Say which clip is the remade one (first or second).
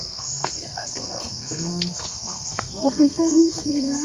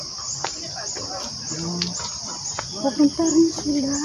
first